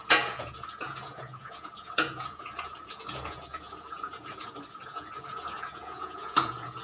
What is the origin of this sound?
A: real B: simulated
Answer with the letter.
B